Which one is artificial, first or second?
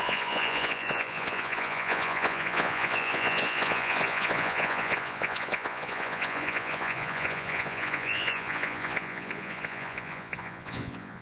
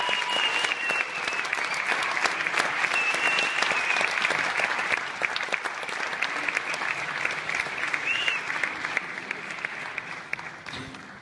first